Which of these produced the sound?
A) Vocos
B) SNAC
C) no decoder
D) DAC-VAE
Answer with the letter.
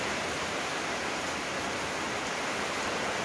C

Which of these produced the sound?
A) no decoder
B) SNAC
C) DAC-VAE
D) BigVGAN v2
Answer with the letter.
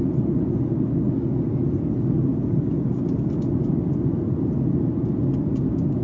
A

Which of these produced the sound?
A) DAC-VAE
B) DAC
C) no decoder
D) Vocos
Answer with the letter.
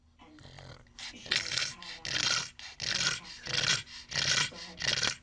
C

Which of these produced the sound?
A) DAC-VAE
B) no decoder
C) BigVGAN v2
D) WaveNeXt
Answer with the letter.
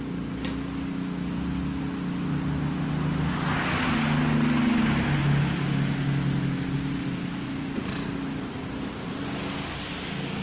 B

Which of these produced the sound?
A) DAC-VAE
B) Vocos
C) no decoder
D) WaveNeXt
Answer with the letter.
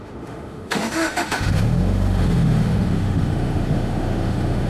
A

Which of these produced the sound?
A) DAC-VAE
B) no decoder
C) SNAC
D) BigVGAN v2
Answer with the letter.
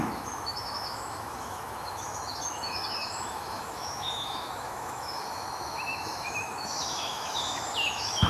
A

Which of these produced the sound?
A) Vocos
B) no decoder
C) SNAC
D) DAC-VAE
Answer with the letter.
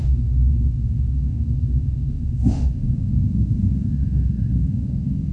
D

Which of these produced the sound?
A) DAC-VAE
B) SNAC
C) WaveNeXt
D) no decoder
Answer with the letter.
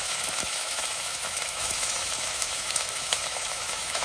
A